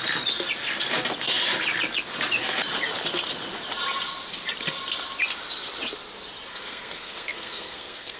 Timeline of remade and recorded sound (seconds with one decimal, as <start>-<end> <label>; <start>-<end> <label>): 0.0-6.5 recorded; 6.5-8.2 remade